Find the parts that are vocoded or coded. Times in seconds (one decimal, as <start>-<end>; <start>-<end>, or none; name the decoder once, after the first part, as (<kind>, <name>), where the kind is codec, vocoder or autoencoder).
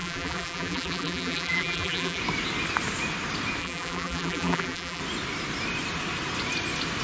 0.0-2.2 (vocoder, BigVGAN v2); 3.6-5.0